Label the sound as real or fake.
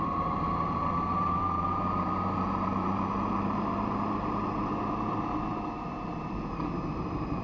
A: fake